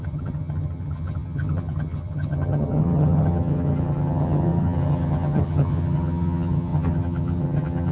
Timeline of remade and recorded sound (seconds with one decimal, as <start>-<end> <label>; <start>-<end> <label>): 0.0-7.9 remade